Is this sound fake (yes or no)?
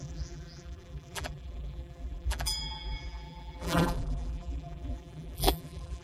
yes